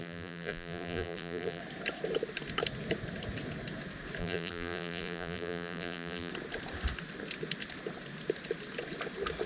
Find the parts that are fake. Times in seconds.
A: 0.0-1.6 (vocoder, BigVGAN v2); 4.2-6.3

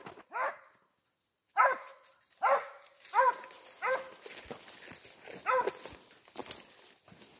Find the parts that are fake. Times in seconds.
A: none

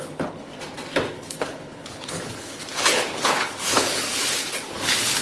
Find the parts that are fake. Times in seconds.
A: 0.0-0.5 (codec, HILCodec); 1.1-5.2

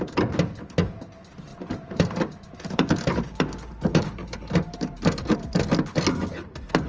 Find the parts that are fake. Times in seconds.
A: 1.5-5.6 (vocoder, BigVGAN v2)

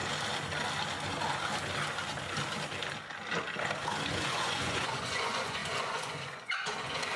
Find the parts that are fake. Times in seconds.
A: 4.0-7.2 (vocoder, Vocos)